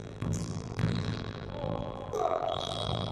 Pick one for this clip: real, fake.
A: fake